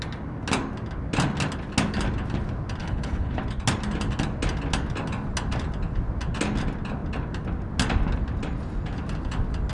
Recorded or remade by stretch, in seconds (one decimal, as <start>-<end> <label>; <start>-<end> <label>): 0.0-2.8 recorded; 2.8-3.4 remade; 3.4-9.7 recorded